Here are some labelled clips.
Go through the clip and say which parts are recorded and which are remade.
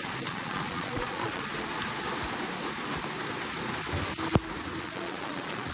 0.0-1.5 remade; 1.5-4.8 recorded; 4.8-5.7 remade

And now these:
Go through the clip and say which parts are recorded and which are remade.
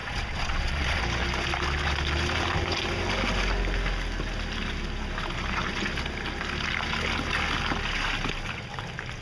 0.0-1.0 remade; 1.0-9.2 recorded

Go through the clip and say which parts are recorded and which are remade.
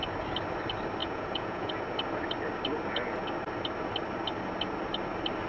0.0-1.0 recorded; 1.0-1.7 remade; 1.7-5.5 recorded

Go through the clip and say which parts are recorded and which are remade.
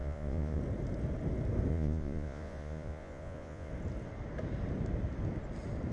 0.0-0.6 remade; 0.6-1.7 recorded; 1.7-3.7 remade; 3.7-5.9 recorded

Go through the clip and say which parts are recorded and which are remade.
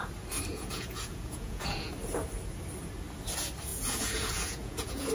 0.0-0.5 recorded; 0.5-1.9 remade; 1.9-3.7 recorded; 3.7-5.1 remade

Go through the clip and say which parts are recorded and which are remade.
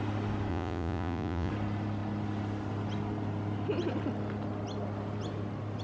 0.0-0.5 recorded; 0.5-1.5 remade; 1.5-5.8 recorded